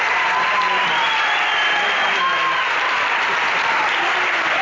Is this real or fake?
real